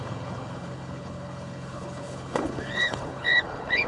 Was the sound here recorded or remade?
remade